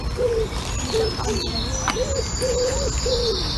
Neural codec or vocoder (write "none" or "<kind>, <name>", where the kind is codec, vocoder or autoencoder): vocoder, BigVGAN v2